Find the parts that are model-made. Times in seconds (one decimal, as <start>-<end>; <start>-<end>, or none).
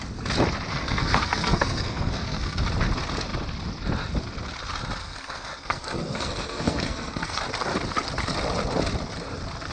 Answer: 0.7-2.6; 5.0-7.4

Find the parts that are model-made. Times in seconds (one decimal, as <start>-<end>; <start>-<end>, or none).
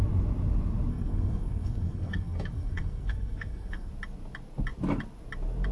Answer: 0.9-3.9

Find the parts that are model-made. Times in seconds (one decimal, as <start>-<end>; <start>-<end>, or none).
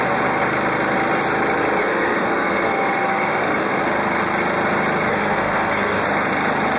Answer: 1.8-3.8; 5.1-6.0